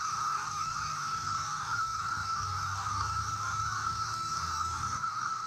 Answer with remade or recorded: remade